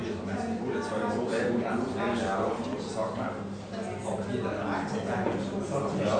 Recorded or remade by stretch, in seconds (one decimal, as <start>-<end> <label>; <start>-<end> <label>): 0.0-6.2 recorded